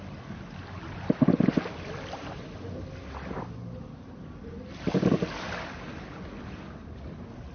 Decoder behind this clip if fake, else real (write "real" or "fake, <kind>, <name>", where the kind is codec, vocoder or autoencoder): real